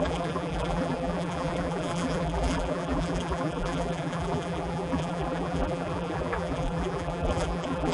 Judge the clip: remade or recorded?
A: remade